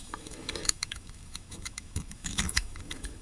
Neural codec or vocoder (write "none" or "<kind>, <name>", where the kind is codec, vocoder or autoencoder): autoencoder, DAC-VAE